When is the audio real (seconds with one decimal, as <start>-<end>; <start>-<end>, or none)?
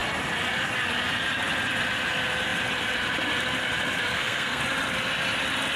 0.0-4.1; 4.6-5.8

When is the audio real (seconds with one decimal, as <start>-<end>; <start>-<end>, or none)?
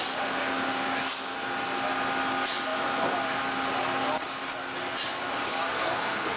0.0-5.7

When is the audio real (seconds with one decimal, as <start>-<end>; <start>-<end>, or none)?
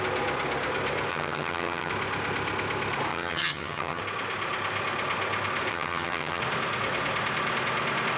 0.0-1.1; 1.9-3.1; 4.0-5.7; 6.4-8.2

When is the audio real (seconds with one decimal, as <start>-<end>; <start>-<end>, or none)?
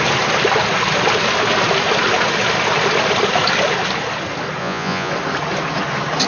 0.0-4.6; 5.1-6.3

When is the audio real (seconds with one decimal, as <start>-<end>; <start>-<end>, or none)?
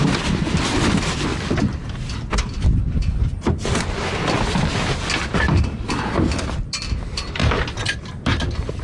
0.0-1.3; 2.4-4.1; 5.6-7.4; 8.1-8.8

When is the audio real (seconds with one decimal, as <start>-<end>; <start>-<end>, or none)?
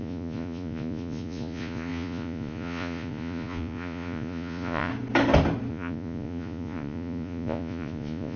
4.9-5.7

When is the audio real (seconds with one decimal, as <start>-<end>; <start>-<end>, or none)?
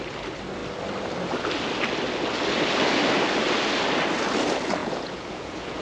0.0-4.8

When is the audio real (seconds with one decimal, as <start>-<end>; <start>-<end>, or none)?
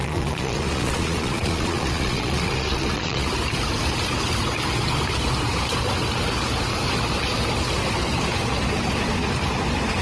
3.3-10.0